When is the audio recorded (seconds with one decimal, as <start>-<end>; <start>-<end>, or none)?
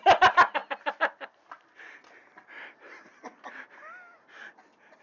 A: 0.0-5.0